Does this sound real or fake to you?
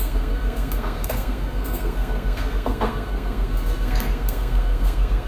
fake